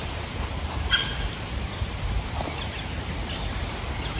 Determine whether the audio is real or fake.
real